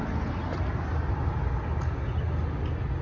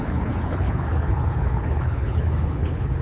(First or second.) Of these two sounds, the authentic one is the first